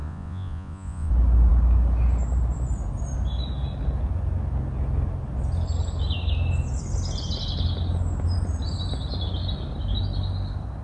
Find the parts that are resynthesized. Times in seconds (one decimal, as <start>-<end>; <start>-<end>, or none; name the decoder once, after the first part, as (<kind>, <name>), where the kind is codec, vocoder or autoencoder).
0.0-1.1 (vocoder, Vocos)